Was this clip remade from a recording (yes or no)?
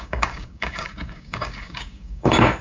yes